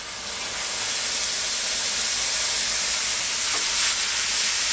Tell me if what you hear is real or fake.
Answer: real